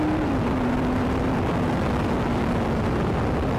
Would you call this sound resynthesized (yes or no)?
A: yes